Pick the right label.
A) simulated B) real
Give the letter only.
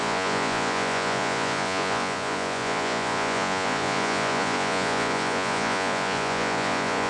A